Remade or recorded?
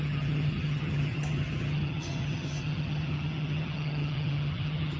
remade